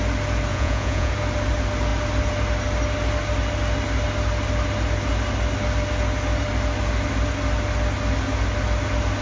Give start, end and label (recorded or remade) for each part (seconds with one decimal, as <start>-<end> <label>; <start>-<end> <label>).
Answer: 0.0-0.5 recorded; 0.5-1.1 remade; 1.1-9.2 recorded